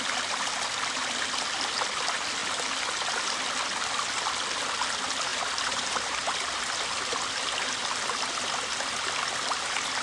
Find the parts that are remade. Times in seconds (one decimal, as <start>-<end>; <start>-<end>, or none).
5.3-6.6